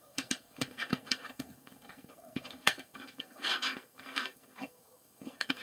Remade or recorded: remade